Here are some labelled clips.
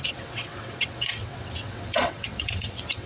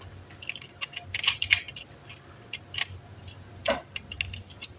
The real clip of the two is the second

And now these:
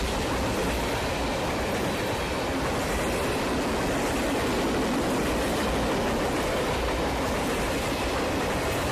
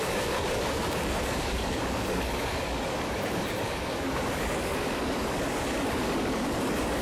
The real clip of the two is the first